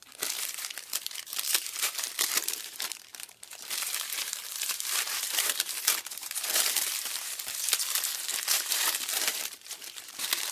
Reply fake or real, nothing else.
fake